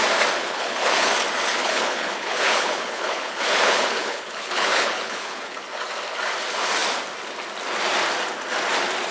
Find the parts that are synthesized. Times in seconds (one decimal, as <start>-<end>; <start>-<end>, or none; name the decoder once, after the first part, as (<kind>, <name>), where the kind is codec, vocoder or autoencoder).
0.4-1.1 (codec, HILCodec); 1.6-5.6

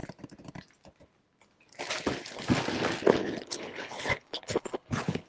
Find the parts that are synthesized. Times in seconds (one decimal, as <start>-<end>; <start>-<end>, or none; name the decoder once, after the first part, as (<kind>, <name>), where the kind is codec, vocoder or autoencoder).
3.2-5.3 (codec, HILCodec)

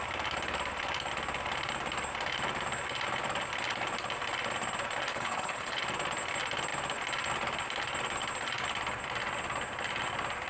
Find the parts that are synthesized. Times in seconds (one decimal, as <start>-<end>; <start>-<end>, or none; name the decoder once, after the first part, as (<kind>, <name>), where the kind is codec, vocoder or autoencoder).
5.1-5.8 (codec, HILCodec)